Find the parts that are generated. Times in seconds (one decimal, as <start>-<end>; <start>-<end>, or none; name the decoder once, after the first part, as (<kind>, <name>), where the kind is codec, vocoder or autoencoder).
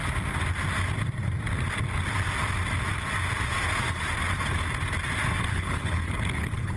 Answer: 5.5-6.8 (codec, HILCodec)